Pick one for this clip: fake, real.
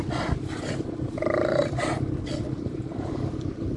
real